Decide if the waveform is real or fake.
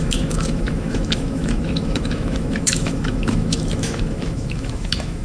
fake